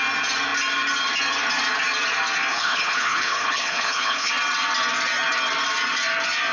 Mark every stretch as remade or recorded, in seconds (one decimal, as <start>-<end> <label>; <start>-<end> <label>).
0.0-2.5 recorded; 2.5-4.3 remade; 4.3-6.5 recorded